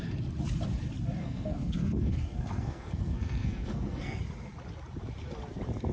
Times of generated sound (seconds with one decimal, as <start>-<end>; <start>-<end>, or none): 1.2-4.2